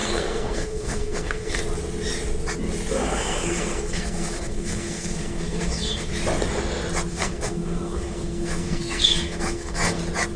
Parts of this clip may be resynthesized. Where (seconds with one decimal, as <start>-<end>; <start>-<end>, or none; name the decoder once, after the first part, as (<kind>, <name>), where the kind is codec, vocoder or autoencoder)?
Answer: 0.0-1.6 (codec, SNAC); 3.1-6.1; 7.1-10.0